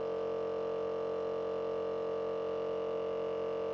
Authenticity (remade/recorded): recorded